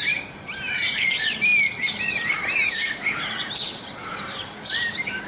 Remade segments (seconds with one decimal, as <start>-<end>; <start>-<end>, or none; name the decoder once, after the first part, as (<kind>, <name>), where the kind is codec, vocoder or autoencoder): 0.0-1.5 (vocoder, BigVGAN v2); 2.1-5.3